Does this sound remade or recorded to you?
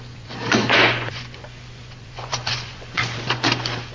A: remade